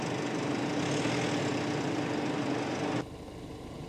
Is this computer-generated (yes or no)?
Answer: no